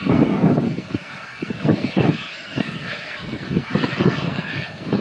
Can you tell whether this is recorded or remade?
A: remade